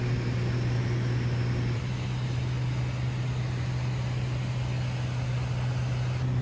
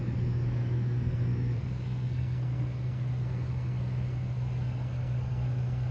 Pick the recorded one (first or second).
first